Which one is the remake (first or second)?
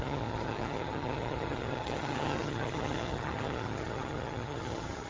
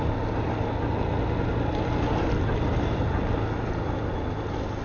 first